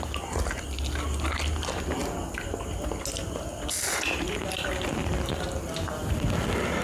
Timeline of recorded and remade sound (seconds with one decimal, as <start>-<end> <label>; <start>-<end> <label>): 0.0-6.8 recorded